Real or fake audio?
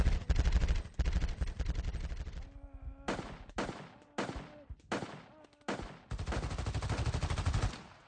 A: real